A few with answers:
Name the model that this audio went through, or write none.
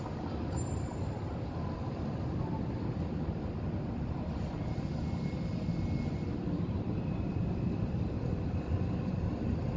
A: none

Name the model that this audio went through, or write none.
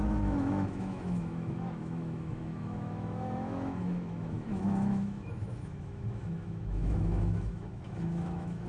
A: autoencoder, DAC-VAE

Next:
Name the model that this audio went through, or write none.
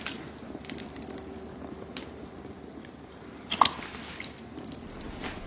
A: none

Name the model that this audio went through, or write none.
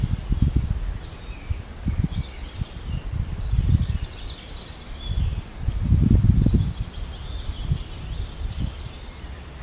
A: none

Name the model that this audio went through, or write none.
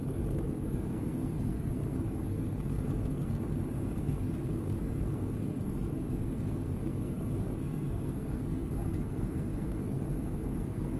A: codec, SNAC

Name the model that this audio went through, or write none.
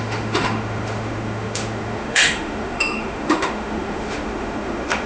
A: autoencoder, DAC-VAE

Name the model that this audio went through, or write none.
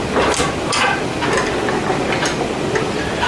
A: none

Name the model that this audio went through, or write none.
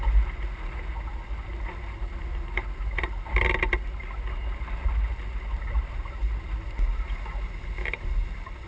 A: none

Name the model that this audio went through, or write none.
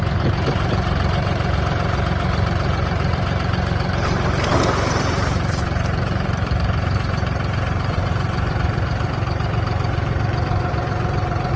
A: vocoder, BigVGAN v2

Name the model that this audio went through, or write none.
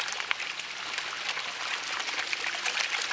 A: none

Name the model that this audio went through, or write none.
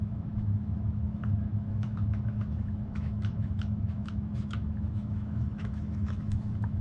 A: autoencoder, DAC-VAE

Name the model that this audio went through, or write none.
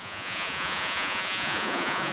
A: vocoder, Vocos